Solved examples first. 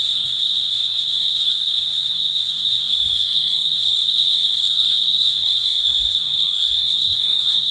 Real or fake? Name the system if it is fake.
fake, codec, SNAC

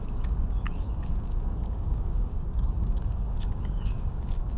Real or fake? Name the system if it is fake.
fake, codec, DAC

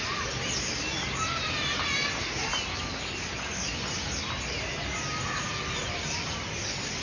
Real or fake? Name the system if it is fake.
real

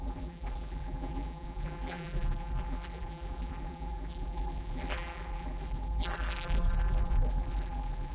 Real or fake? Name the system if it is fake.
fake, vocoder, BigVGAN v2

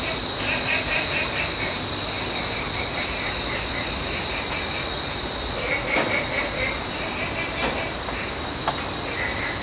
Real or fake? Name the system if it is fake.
real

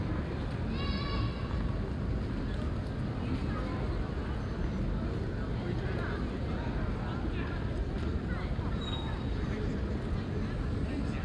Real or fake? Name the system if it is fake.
real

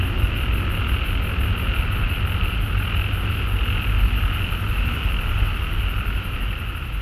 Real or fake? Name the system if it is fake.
real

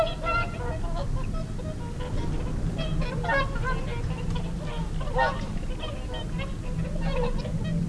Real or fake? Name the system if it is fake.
real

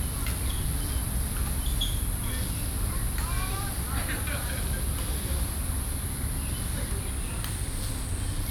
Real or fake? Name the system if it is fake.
real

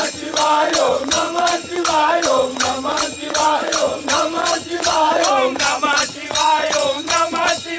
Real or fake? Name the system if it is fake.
fake, vocoder, Vocos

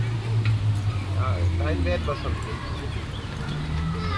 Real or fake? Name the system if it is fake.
real